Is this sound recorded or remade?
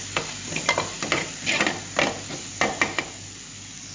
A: recorded